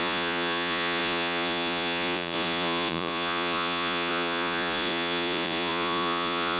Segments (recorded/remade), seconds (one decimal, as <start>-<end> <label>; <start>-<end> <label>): 0.0-6.6 remade